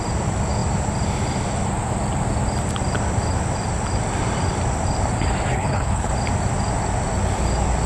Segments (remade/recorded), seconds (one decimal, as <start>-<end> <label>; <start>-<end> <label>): 0.0-5.5 recorded; 5.5-6.1 remade; 6.1-7.9 recorded